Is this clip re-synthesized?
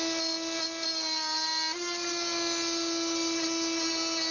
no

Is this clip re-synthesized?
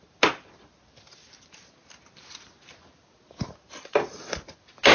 no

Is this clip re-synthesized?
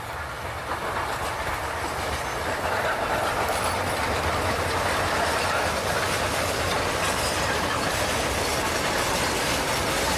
no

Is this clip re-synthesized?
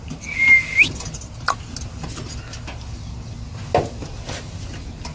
no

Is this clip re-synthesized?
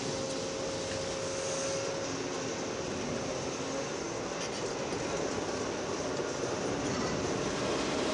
no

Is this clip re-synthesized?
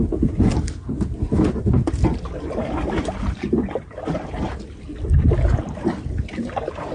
no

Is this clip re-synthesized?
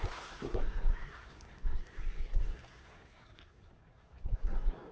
yes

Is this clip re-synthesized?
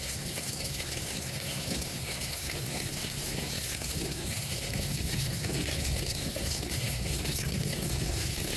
yes